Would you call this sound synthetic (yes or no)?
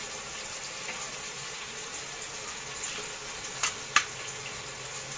no